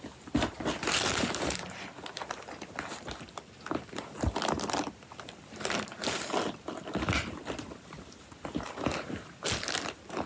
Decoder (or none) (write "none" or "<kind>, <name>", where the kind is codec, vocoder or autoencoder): none